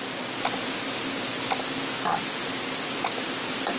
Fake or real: real